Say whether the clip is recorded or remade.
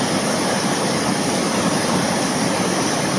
recorded